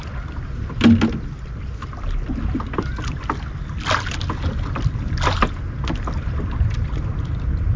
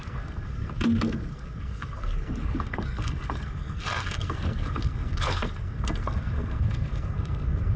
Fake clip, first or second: second